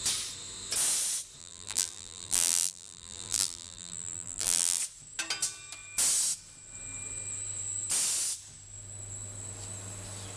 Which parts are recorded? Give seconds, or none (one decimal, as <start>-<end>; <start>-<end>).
0.0-1.4; 4.8-10.4